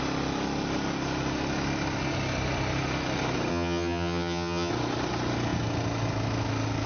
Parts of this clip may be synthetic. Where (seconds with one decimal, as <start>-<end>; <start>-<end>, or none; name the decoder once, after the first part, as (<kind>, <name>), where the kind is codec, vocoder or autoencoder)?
3.5-4.7 (vocoder, HiFi-GAN)